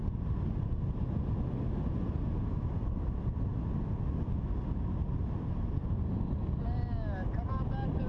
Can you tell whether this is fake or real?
real